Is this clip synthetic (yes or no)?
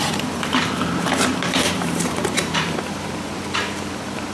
yes